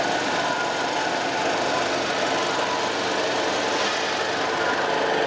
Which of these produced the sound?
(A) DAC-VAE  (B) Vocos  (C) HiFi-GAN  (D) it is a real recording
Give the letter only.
D